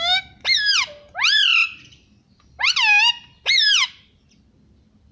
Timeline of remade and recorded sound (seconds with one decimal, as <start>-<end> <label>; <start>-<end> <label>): 0.0-1.5 recorded; 1.5-2.6 remade; 2.6-5.1 recorded